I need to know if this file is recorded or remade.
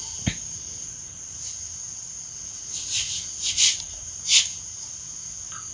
recorded